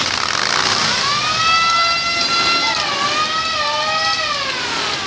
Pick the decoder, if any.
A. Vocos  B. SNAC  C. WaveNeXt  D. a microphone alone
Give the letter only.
D